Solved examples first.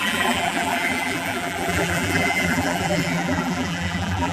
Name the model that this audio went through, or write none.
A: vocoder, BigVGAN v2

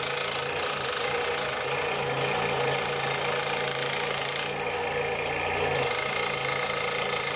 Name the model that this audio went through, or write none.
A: none